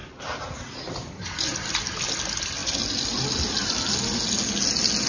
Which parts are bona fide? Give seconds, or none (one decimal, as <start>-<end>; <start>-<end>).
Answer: 0.0-5.1